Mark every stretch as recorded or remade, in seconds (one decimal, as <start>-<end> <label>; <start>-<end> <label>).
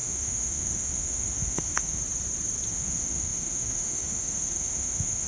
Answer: 0.0-2.0 remade; 2.0-2.7 recorded; 2.7-5.3 remade